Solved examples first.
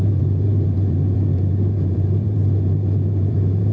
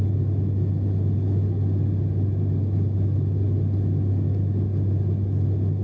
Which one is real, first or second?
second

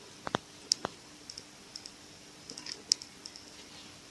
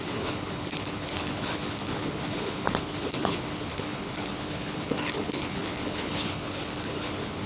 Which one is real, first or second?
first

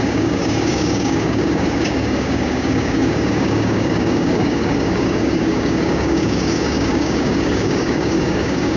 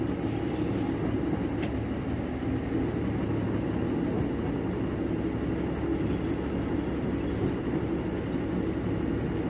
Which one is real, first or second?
second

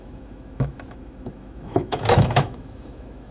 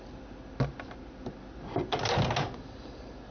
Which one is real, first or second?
second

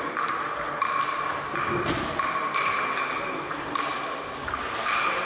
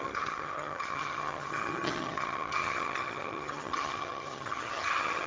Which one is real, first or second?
first